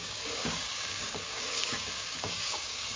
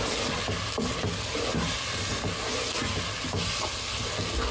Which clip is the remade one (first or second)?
first